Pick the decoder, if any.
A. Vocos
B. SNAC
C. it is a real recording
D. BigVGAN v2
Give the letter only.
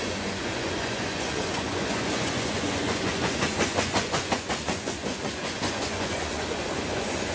A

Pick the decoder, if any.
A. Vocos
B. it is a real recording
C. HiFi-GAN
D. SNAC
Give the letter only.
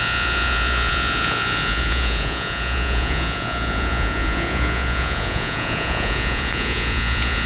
A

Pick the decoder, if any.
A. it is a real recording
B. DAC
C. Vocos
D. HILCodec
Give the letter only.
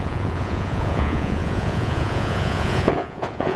C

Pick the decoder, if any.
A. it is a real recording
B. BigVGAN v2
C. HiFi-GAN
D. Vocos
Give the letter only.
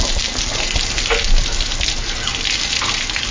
A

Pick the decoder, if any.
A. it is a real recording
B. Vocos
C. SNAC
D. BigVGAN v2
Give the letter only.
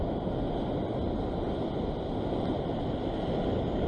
A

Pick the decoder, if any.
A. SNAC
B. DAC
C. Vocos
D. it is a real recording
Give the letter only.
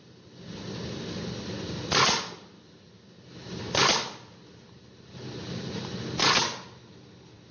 D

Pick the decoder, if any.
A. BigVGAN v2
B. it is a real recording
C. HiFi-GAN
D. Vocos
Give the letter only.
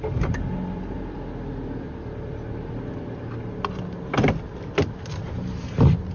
B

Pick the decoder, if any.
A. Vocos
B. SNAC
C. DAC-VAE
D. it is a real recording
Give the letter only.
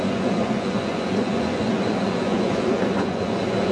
A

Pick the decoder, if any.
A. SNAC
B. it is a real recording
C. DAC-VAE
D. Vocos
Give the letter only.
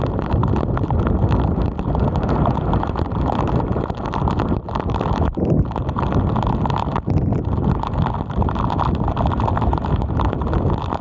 B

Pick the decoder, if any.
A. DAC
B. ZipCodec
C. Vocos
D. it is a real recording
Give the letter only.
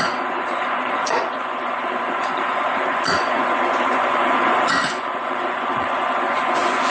C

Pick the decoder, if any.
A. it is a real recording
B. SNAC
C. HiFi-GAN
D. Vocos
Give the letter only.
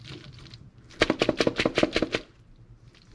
A